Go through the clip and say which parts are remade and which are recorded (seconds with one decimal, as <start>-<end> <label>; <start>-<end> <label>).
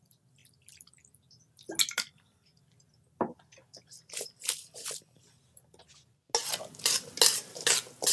0.0-8.1 recorded